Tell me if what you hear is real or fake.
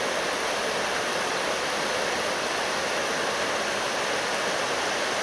real